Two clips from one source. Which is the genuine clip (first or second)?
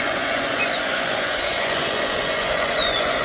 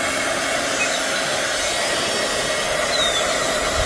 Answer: second